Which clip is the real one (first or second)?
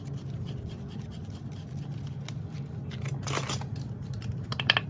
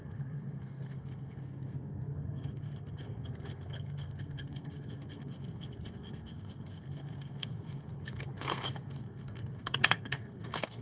first